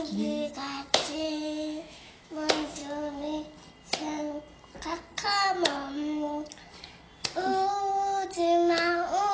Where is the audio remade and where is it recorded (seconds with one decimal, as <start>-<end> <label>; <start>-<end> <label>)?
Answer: 0.0-2.8 remade; 2.8-7.2 recorded; 7.2-7.9 remade; 7.9-8.4 recorded; 8.4-9.3 remade